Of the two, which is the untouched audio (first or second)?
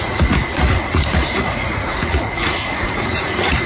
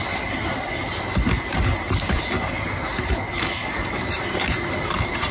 second